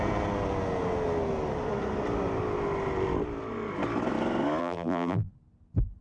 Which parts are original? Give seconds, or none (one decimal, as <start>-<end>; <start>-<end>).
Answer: 0.0-4.6; 5.3-6.0